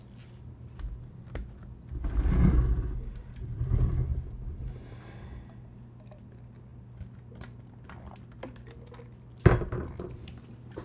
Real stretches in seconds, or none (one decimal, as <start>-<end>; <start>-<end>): 0.0-10.8